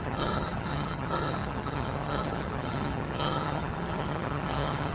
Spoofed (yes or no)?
yes